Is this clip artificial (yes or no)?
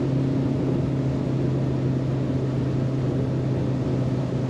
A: no